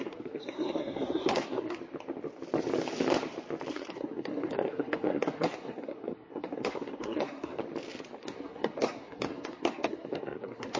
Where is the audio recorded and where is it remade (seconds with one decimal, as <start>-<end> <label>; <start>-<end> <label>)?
0.0-1.8 remade; 1.8-3.7 recorded; 3.7-7.6 remade; 7.6-8.2 recorded; 8.2-10.8 remade